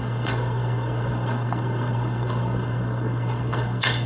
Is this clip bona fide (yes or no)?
no